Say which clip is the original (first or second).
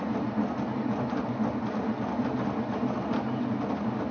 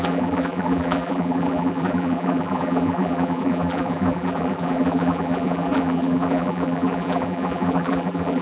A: first